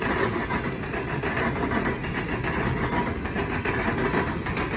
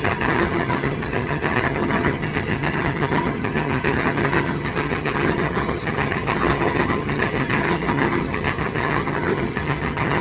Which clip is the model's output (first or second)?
second